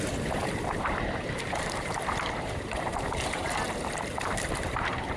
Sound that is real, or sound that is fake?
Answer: fake